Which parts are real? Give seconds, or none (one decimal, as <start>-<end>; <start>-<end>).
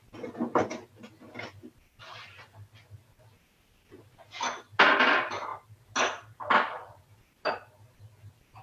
0.0-8.6